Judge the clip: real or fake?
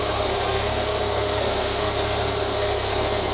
fake